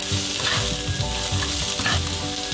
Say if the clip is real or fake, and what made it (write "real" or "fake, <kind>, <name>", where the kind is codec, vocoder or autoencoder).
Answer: real